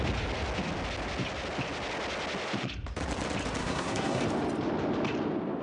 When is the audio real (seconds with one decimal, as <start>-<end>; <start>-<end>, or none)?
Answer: 0.0-3.6; 4.2-5.6